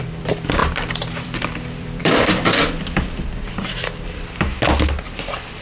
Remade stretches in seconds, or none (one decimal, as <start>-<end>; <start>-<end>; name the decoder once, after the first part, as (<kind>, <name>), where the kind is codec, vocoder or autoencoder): 0.0-4.5 (vocoder, BigVGAN v2)